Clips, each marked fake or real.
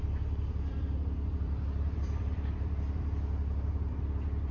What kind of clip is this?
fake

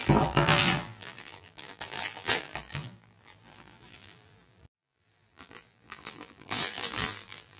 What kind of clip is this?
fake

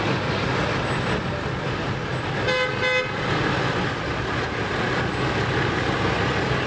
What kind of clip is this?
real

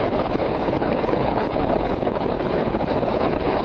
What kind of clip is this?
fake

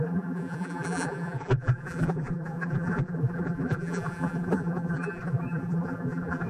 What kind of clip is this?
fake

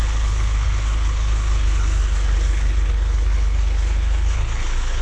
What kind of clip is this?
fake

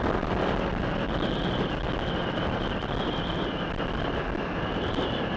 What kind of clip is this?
real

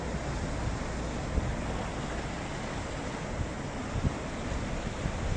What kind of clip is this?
real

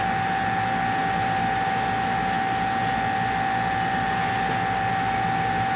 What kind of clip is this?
real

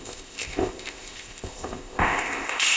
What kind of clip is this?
fake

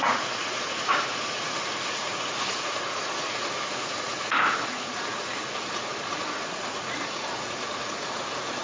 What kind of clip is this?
fake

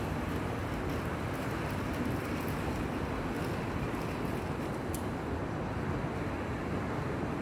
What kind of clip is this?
real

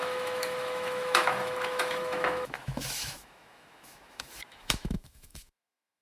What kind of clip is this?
fake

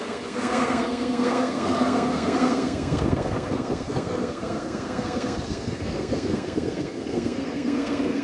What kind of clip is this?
fake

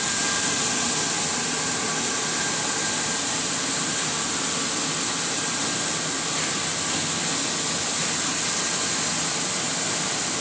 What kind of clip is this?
real